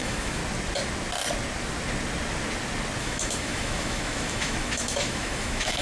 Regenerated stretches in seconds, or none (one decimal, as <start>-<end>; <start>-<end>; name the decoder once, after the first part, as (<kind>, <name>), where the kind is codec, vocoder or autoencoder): 0.0-0.4 (autoencoder, DAC-VAE); 3.0-5.8